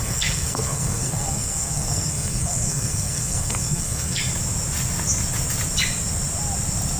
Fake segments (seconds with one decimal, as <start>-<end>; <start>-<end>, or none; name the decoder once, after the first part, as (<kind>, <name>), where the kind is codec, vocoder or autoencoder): 0.0-4.2 (codec, SNAC)